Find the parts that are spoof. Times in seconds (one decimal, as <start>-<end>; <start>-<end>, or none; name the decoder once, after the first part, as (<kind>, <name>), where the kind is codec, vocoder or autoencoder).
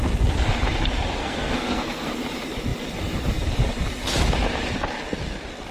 1.2-2.1 (codec, SNAC)